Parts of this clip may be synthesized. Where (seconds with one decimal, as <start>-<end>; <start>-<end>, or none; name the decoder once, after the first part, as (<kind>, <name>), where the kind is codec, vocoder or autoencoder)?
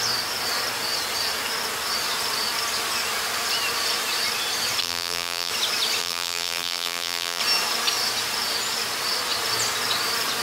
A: 4.8-5.5 (vocoder, BigVGAN v2); 6.0-7.4